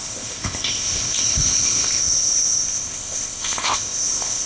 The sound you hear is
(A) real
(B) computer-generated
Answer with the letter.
B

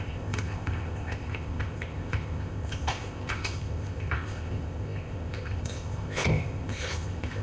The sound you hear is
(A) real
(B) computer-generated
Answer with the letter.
B